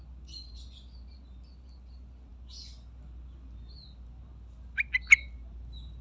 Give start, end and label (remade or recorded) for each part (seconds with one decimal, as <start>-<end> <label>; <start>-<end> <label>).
0.0-6.0 recorded